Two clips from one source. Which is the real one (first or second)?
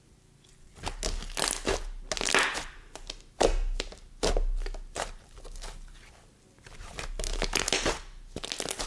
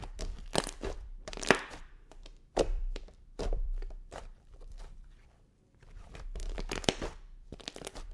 first